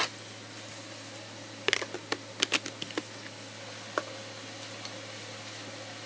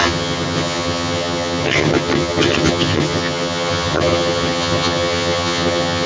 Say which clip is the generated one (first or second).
second